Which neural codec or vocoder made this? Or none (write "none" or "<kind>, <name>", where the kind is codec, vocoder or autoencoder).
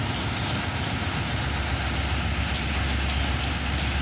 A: none